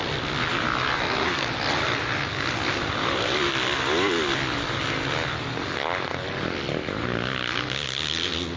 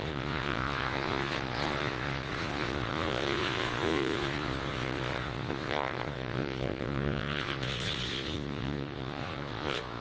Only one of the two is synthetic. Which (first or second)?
second